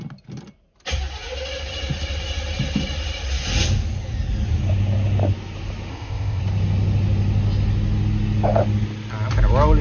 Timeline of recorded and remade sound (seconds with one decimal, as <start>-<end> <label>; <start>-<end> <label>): 0.0-5.9 recorded; 5.9-6.4 remade; 6.4-9.8 recorded